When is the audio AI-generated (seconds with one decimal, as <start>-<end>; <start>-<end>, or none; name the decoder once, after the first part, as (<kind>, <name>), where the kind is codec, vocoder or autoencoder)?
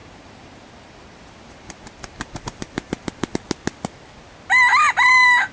0.0-3.3 (vocoder, BigVGAN v2)